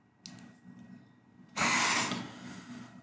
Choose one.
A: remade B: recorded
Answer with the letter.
B